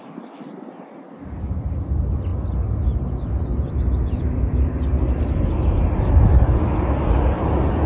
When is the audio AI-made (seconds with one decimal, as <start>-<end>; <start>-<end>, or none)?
none